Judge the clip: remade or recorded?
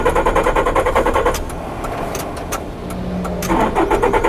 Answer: recorded